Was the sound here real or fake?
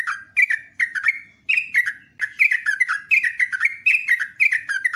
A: real